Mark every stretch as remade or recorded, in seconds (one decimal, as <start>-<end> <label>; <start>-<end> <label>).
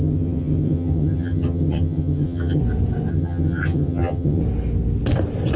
0.0-2.6 remade; 2.6-3.1 recorded; 3.1-4.4 remade; 4.4-5.6 recorded